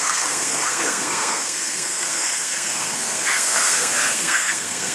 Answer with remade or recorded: remade